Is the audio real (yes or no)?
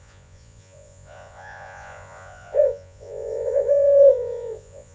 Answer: no